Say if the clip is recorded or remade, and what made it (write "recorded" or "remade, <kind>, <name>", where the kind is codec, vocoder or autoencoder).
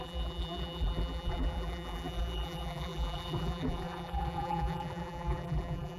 remade, vocoder, BigVGAN v2